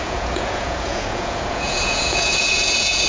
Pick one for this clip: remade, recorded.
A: remade